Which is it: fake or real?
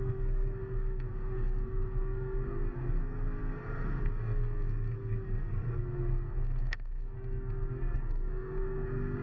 fake